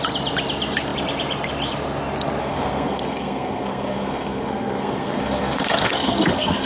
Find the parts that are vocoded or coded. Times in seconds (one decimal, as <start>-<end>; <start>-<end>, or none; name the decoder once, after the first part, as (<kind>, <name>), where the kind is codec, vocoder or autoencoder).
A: 2.4-6.7 (codec, SNAC)